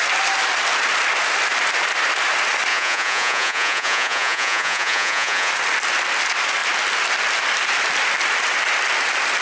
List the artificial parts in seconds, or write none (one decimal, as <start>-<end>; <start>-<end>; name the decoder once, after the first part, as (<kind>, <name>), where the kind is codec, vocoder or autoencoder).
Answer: 2.7-5.5 (vocoder, Vocos)